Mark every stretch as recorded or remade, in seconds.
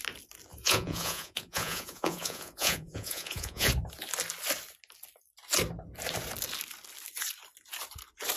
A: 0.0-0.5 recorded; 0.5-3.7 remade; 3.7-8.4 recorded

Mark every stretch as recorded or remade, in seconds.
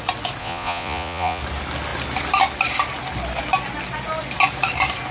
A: 0.0-0.4 recorded; 0.4-1.4 remade; 1.4-5.1 recorded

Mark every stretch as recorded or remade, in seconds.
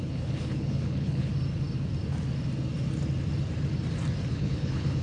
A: 0.0-1.3 remade; 1.3-4.3 recorded; 4.3-5.0 remade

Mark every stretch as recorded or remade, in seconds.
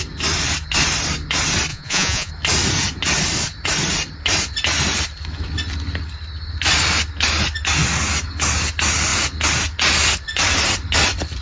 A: 0.0-1.7 recorded; 1.7-2.3 remade; 2.3-11.4 recorded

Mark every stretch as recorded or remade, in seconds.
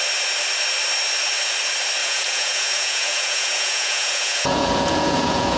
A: 0.0-2.0 recorded; 2.0-5.6 remade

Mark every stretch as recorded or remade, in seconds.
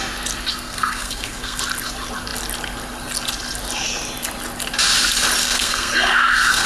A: 0.0-0.5 recorded; 0.5-1.6 remade; 1.6-5.4 recorded; 5.4-6.7 remade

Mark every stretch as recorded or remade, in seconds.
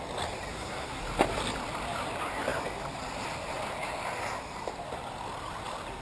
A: 0.0-0.5 recorded; 0.5-1.0 remade; 1.0-6.0 recorded